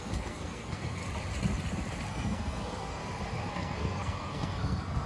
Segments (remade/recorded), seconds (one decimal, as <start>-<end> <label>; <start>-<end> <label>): 0.0-1.0 remade; 1.0-2.1 recorded; 2.1-3.0 remade; 3.0-3.5 recorded; 3.5-5.1 remade